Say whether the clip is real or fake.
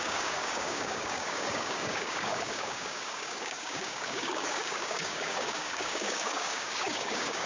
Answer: fake